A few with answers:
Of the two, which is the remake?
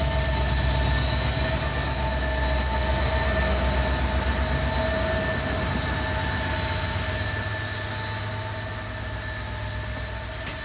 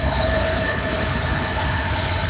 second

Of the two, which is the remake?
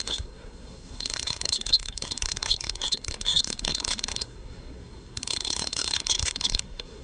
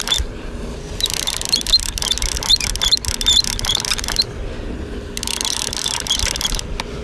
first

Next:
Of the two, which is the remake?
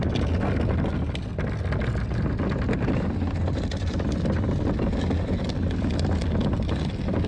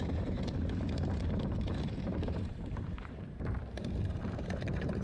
second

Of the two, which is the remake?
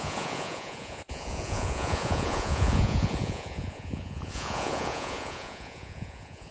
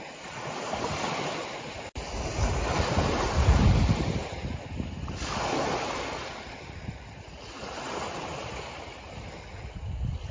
first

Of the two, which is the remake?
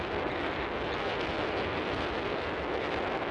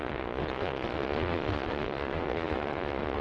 second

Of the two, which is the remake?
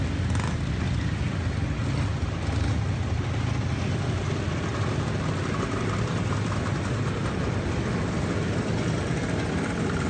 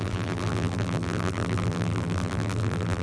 second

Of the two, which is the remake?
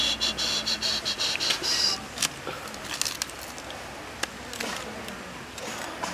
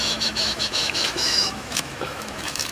second